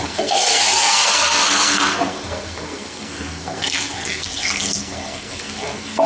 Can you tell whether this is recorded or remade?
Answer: remade